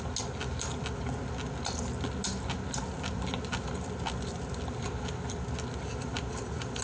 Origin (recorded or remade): recorded